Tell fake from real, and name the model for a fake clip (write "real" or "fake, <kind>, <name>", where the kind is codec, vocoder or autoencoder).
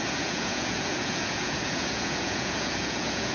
fake, vocoder, Vocos